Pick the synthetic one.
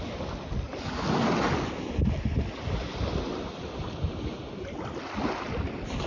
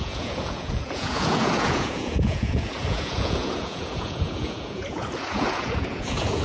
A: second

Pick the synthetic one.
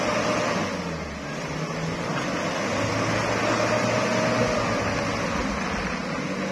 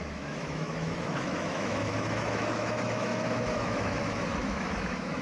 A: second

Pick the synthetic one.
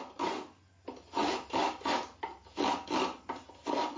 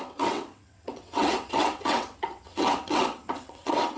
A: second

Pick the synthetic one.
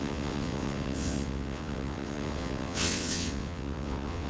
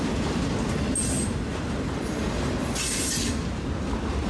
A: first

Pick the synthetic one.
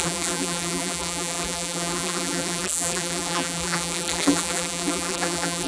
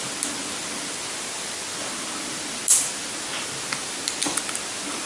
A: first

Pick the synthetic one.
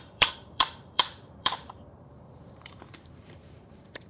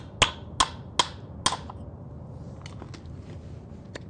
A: first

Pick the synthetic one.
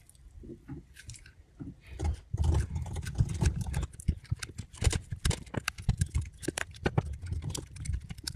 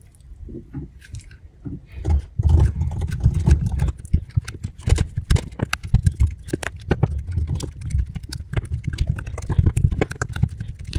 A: first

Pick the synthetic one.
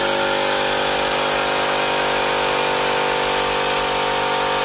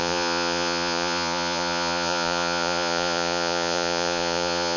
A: second